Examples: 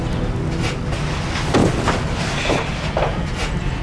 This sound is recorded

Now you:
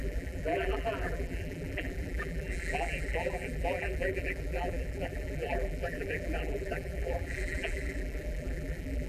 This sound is remade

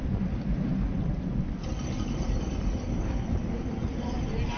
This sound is recorded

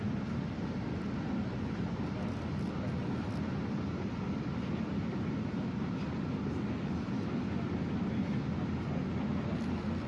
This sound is recorded